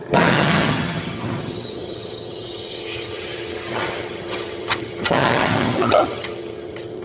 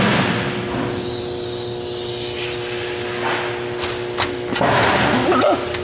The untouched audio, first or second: second